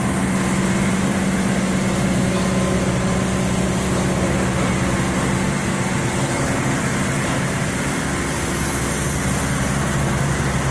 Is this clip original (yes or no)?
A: yes